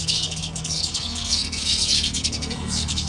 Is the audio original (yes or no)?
no